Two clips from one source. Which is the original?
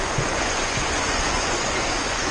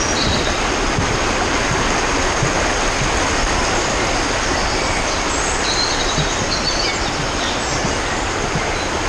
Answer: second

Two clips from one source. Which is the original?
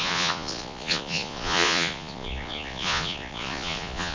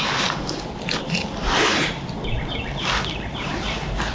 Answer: second